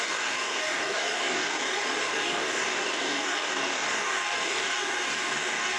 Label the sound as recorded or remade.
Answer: remade